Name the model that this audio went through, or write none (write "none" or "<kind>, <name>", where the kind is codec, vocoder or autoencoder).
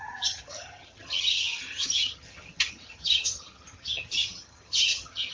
vocoder, HiFi-GAN